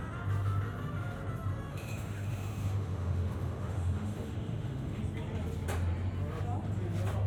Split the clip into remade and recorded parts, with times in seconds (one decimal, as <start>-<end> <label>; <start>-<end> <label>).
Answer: 0.0-1.7 recorded; 1.7-5.0 remade; 5.0-7.3 recorded